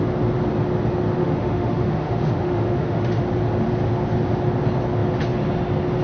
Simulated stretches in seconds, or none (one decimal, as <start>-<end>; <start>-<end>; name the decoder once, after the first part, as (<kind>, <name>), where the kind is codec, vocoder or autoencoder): 1.2-3.2 (autoencoder, DAC-VAE)